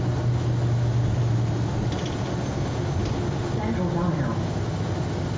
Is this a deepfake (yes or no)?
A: no